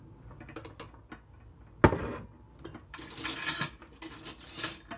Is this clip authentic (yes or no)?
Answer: yes